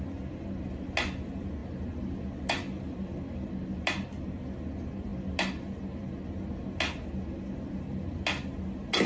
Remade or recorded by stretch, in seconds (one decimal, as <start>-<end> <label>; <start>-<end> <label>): 0.0-9.1 recorded